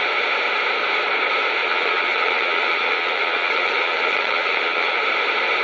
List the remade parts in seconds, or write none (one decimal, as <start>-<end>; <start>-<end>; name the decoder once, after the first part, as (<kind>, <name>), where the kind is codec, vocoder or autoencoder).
1.6-5.0 (vocoder, Vocos)